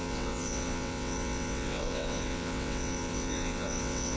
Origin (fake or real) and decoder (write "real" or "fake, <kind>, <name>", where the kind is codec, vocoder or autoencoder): fake, vocoder, WaveNeXt